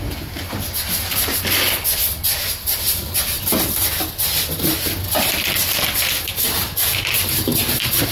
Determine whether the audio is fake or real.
real